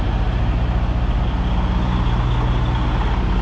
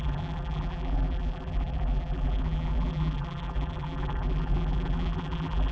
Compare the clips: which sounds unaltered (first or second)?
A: first